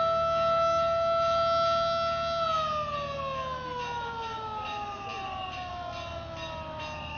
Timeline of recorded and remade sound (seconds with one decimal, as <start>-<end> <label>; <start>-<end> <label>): 0.0-7.2 recorded